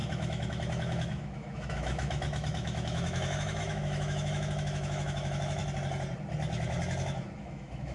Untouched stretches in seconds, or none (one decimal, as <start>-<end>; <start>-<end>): 5.6-7.4